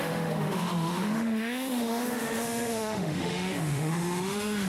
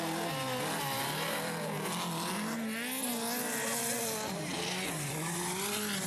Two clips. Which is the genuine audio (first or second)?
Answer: second